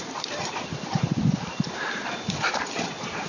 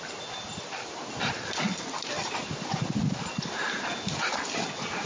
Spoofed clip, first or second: first